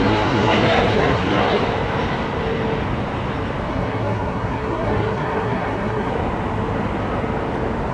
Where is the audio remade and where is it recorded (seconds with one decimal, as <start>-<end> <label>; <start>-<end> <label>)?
0.0-1.6 remade; 1.6-3.7 recorded; 3.7-6.1 remade; 6.1-7.9 recorded